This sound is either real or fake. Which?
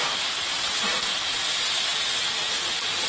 fake